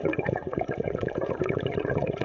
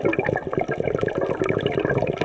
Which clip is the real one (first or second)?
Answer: second